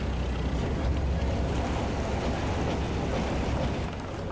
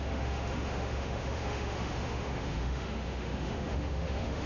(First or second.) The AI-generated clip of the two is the second